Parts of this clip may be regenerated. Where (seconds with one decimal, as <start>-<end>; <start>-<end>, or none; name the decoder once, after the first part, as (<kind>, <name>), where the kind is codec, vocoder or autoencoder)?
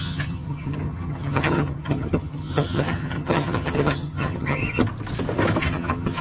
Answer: 0.0-4.6 (vocoder, HiFi-GAN); 5.6-6.2